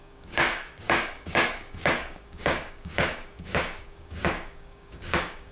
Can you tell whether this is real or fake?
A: fake